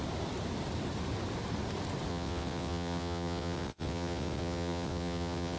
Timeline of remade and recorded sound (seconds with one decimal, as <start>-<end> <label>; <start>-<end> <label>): 0.0-2.1 recorded; 2.1-5.6 remade